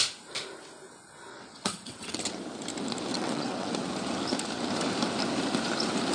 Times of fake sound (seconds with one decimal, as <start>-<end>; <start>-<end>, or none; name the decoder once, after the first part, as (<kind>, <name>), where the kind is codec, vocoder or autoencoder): 1.3-2.2 (vocoder, WaveNeXt); 3.1-3.7